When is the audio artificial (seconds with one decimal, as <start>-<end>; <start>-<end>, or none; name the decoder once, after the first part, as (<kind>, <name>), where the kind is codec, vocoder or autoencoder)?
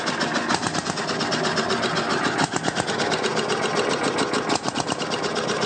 none